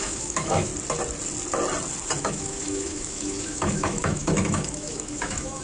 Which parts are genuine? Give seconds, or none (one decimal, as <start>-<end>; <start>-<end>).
0.7-2.2